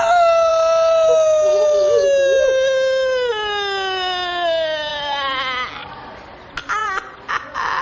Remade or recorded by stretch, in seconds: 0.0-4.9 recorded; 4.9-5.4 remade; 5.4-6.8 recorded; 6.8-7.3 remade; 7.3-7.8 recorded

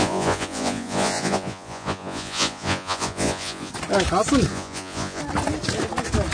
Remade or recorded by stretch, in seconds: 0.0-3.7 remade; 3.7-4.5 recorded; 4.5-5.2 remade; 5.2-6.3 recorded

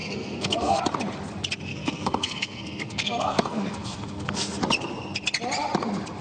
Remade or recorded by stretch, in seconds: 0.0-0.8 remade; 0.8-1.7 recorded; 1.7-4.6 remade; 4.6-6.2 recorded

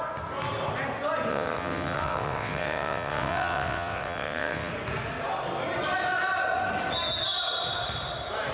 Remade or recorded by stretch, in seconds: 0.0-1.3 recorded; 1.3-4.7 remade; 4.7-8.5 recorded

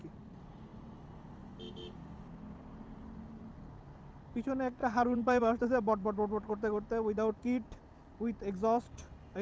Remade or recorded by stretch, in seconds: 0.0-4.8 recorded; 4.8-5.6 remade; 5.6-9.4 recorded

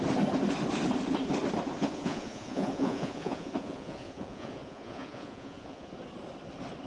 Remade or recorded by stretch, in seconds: 0.0-1.8 recorded; 1.8-5.9 remade; 5.9-6.9 recorded

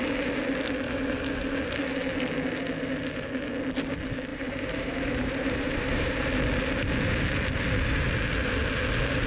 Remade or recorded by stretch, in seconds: 0.0-4.3 recorded; 4.3-6.3 remade; 6.3-9.3 recorded